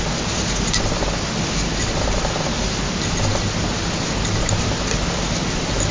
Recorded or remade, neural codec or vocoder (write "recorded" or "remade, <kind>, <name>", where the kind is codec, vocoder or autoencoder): recorded